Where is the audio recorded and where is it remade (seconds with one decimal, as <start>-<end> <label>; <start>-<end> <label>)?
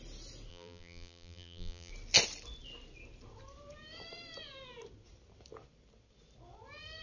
0.0-0.5 recorded; 0.5-1.9 remade; 1.9-7.0 recorded